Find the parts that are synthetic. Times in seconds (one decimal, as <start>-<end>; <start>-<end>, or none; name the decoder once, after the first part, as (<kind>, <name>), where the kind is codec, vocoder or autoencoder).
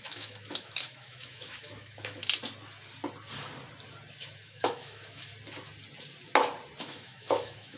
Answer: 0.0-2.2 (autoencoder, DAC-VAE); 4.2-5.3; 6.8-7.8